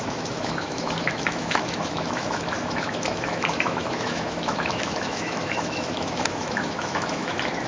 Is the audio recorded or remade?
remade